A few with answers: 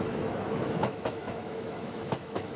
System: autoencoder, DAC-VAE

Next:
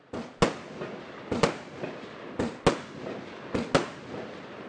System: none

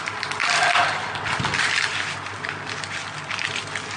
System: none